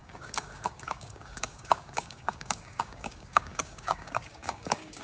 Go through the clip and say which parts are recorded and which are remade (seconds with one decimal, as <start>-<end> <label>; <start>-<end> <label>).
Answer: 0.0-5.0 remade